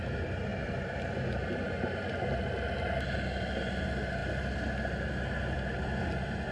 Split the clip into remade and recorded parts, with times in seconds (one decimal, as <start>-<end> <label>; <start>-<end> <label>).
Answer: 0.0-6.5 recorded